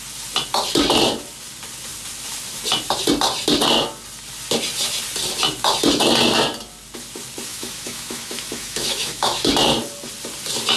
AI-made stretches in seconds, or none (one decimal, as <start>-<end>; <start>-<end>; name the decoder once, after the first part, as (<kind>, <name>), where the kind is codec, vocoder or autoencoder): 7.5-9.5 (autoencoder, DAC-VAE)

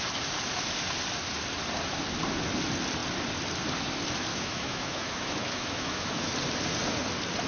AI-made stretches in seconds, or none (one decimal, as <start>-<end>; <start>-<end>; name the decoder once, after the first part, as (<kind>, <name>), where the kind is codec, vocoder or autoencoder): 4.3-6.3 (autoencoder, DAC-VAE)